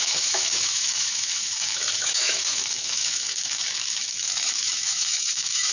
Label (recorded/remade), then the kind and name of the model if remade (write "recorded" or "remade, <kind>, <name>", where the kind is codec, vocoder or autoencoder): remade, autoencoder, DAC-VAE